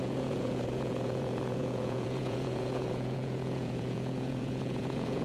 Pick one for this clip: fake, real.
fake